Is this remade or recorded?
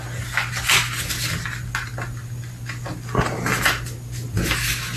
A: recorded